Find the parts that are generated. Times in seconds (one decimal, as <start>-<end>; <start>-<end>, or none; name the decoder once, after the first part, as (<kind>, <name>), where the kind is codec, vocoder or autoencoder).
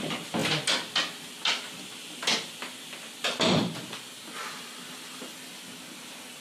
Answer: none